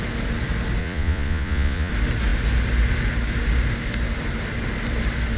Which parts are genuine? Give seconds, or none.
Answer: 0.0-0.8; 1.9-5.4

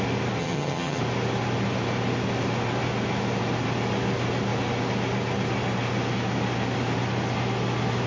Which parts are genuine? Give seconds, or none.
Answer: 0.0-0.4; 1.0-8.1

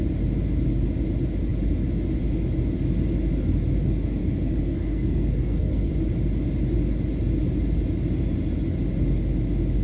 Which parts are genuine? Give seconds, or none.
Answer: 0.0-4.2; 5.9-9.8

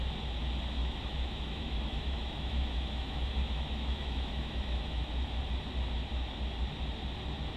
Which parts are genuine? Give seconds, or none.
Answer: 0.0-0.8; 5.4-7.6